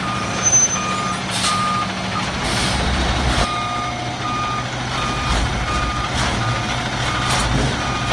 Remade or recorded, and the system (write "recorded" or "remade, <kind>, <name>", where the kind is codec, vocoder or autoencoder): recorded